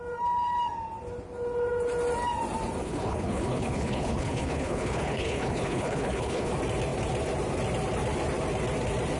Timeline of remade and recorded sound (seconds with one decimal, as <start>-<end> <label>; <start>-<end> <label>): 0.0-2.8 recorded; 2.8-6.5 remade; 6.5-9.2 recorded